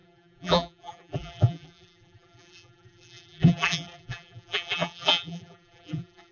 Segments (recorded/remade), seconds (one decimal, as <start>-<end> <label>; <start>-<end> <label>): 0.0-6.3 remade